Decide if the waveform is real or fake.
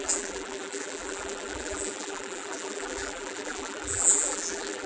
fake